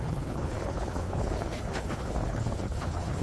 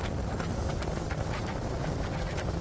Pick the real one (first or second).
second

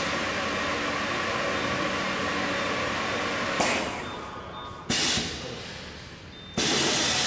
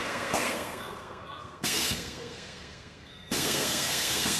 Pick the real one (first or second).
first